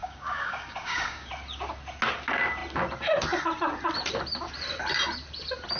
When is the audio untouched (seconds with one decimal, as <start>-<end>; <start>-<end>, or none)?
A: 1.3-5.8